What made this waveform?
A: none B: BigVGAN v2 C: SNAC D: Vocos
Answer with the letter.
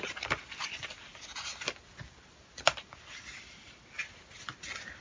A